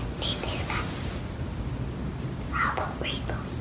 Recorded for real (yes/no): yes